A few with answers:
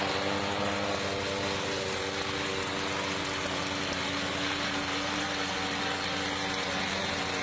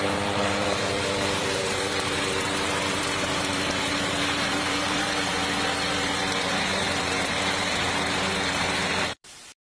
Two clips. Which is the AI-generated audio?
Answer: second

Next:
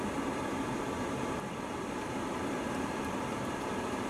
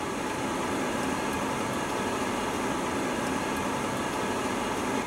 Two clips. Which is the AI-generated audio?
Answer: first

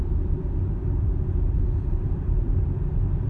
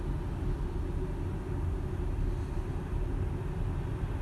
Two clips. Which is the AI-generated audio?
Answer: first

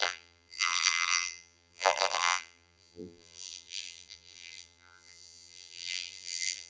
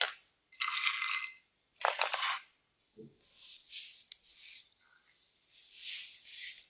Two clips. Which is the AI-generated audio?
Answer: first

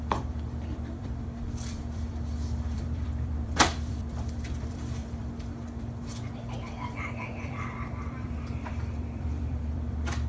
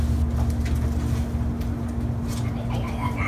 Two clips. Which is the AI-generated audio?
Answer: first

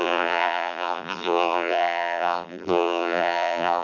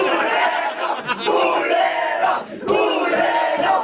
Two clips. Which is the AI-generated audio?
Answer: first